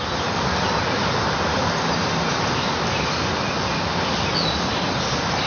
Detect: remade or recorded recorded